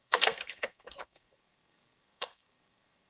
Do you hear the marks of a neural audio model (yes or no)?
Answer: yes